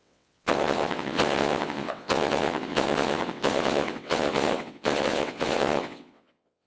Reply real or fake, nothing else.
fake